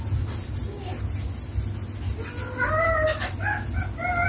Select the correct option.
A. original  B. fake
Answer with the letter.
A